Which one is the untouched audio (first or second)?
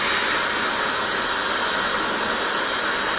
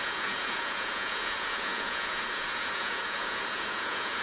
first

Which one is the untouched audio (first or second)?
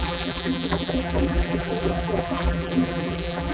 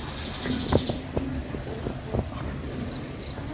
second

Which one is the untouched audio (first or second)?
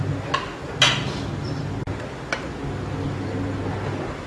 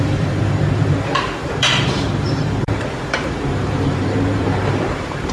first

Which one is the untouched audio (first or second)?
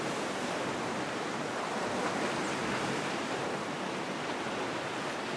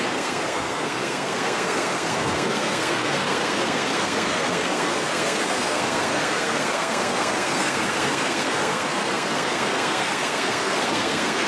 first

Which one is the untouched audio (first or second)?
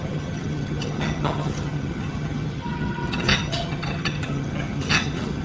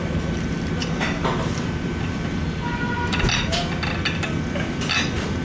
second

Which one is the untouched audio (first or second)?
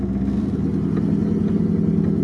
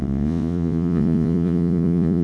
first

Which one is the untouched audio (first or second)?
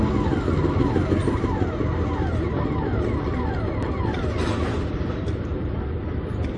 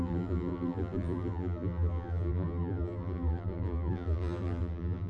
first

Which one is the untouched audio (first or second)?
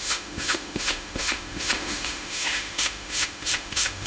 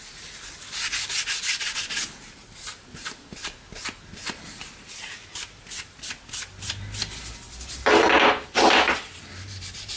second